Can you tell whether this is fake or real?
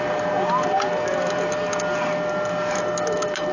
real